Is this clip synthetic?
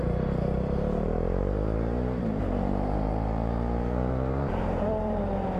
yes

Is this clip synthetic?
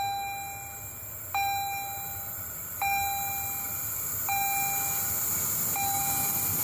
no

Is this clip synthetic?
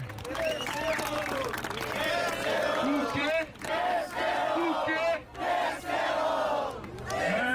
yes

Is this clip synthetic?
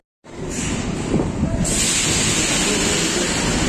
no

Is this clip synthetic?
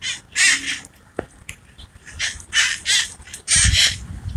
no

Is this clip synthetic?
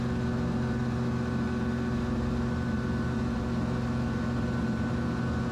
no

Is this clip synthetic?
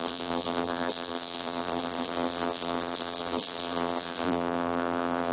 yes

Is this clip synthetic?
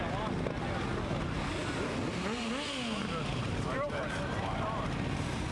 no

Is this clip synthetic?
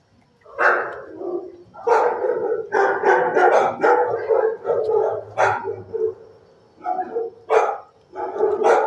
no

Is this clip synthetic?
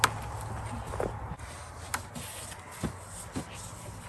no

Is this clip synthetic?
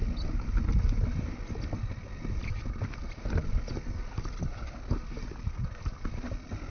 no